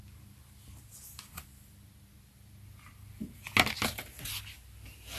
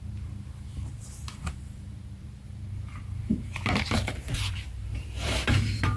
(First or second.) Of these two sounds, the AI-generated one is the second